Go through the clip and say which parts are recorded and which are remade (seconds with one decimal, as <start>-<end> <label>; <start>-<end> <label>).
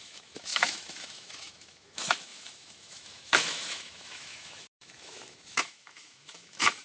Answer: 0.0-6.8 remade